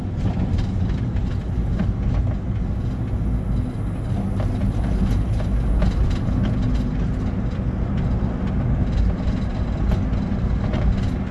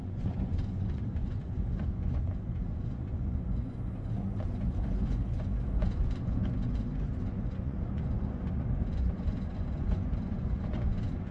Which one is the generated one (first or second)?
second